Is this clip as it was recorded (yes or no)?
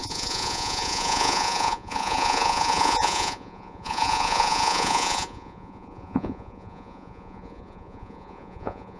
no